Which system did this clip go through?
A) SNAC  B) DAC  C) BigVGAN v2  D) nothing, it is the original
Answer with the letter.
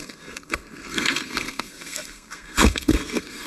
A